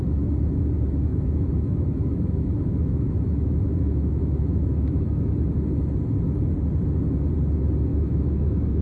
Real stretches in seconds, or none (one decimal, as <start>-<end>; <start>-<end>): 0.0-1.1; 5.3-7.9

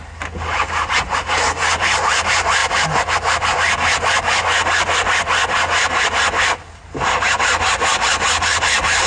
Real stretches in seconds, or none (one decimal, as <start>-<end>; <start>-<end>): 0.0-9.1